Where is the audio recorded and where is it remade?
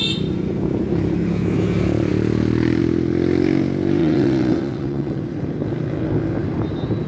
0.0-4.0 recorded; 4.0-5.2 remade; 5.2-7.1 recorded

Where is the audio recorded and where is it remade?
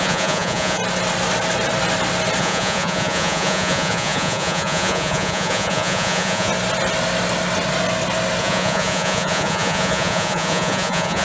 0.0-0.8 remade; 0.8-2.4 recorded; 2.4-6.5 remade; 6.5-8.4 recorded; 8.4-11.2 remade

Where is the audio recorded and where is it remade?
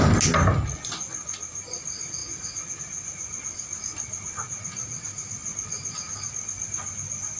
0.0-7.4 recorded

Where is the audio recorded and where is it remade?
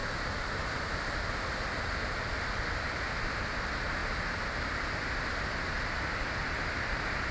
0.0-7.3 recorded